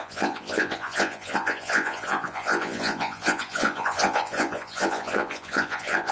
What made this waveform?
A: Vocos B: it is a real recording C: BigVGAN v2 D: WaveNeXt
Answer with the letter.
A